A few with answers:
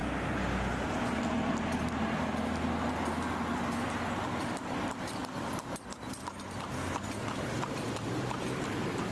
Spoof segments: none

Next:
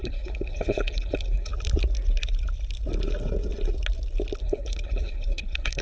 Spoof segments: 0.0-1.5 (codec, HILCodec); 4.4-5.8

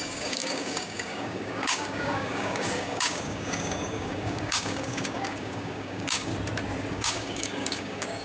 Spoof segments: 0.0-6.3 (codec, DAC); 6.9-8.2

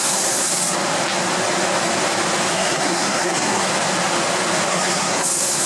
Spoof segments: 0.0-0.5 (codec, SNAC); 2.5-3.7; 4.7-5.7

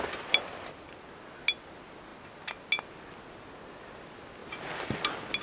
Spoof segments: none

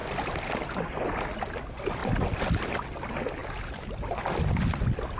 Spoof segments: none

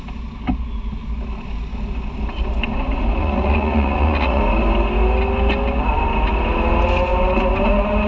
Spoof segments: 3.2-4.4 (vocoder, Vocos)

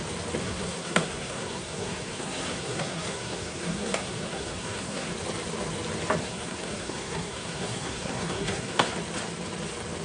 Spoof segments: 0.4-5.1 (codec, SNAC); 6.2-8.9